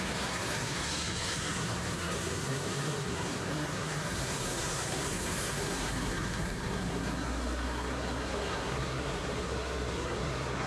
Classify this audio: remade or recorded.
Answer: remade